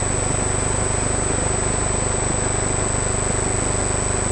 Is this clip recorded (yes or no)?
yes